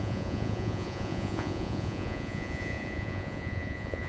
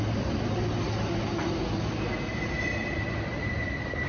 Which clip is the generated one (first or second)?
first